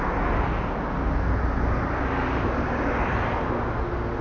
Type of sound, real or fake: real